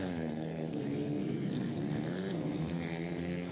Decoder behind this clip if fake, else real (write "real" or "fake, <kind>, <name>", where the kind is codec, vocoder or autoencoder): fake, codec, SNAC